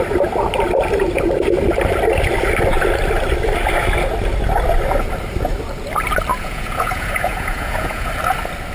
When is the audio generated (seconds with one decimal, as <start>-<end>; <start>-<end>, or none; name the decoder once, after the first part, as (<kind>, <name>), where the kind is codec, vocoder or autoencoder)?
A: 6.3-8.1 (vocoder, Vocos)

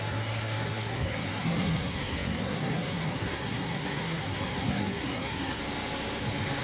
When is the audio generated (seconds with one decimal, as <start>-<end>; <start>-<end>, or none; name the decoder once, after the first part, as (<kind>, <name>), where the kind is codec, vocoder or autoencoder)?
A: 0.0-5.6 (codec, SNAC)

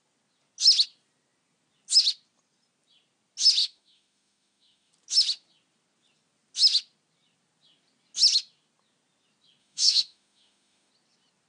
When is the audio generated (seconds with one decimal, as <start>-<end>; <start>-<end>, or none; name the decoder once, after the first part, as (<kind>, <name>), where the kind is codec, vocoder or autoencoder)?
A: 3.6-4.9 (autoencoder, DAC-VAE); 9.6-10.9

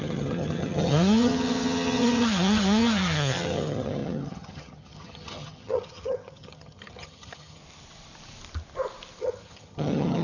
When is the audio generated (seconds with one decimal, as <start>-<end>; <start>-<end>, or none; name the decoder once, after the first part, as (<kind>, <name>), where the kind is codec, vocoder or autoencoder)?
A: 0.0-7.6 (vocoder, HiFi-GAN); 9.2-10.2

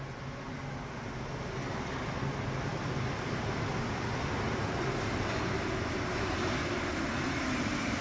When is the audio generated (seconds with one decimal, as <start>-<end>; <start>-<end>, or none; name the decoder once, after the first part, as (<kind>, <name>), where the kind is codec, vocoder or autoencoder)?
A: none

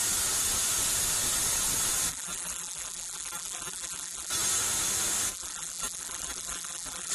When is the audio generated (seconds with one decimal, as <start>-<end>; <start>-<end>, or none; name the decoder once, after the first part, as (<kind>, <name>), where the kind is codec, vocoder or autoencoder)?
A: 2.1-4.3 (vocoder, BigVGAN v2); 5.3-7.1